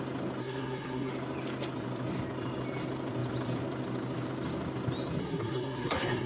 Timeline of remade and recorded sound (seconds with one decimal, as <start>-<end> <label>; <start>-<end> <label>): 0.0-0.4 recorded; 0.4-1.1 remade; 1.1-5.2 recorded; 5.2-6.3 remade